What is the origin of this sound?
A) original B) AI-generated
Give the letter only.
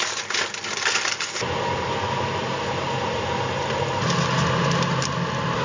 A